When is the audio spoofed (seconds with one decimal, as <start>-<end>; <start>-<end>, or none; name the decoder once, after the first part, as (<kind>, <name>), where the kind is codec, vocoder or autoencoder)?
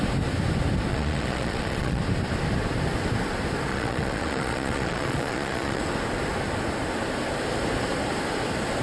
0.9-2.0 (vocoder, Vocos); 3.7-5.8